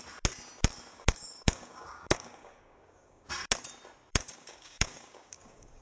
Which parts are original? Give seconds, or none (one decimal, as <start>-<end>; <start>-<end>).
0.0-0.9; 3.3-4.1